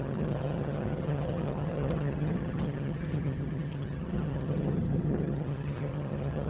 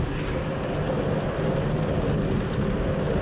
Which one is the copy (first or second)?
first